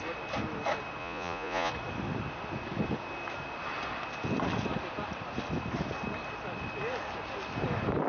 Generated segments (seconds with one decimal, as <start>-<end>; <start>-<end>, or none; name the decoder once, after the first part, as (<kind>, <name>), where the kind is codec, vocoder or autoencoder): 1.0-1.7 (vocoder, Vocos)